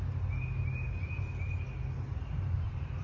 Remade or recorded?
recorded